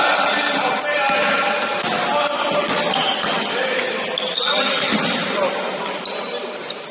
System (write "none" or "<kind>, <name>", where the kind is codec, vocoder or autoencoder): none